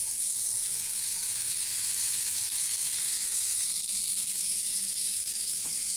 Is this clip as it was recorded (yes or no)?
no